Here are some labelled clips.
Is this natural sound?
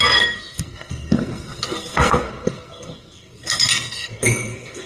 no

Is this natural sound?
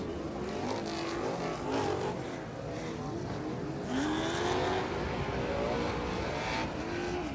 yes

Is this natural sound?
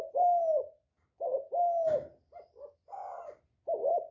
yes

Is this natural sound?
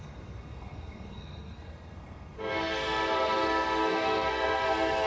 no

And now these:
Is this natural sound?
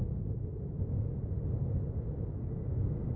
yes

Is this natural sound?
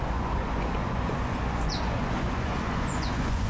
no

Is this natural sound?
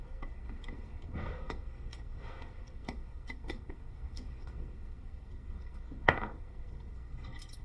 no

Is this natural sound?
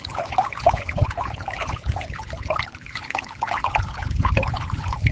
no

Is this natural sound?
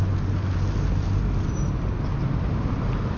yes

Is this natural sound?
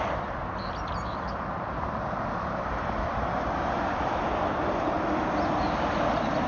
yes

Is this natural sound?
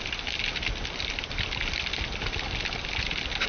yes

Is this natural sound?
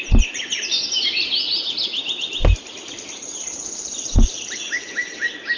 yes